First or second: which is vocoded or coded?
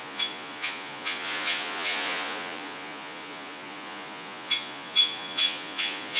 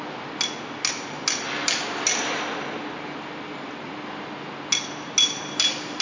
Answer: first